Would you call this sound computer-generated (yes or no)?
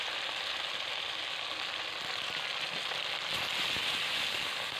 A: no